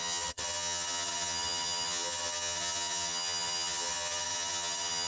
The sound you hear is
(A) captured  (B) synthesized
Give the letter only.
B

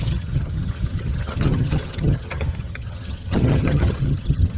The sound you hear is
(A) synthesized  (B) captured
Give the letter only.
A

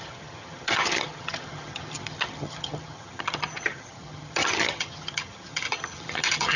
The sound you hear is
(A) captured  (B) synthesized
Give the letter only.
B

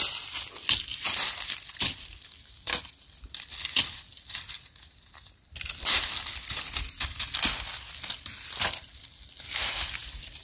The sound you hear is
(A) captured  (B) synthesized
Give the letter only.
A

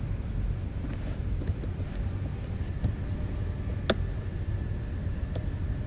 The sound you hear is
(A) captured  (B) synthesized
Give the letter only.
A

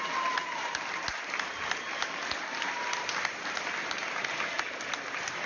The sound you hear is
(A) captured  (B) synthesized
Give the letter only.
A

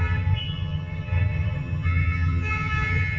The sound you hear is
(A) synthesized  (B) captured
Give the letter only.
A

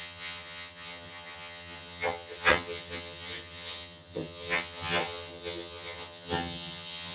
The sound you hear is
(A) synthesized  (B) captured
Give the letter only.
A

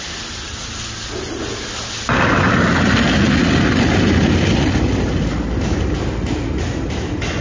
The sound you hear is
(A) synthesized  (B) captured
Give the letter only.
B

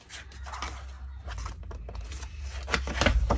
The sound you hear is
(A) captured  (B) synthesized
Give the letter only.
A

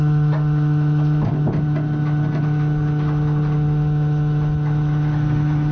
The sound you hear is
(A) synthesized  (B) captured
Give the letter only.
B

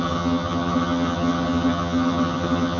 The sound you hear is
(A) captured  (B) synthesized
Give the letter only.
B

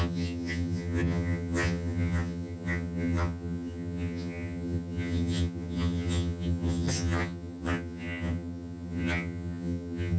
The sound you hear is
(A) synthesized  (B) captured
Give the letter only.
A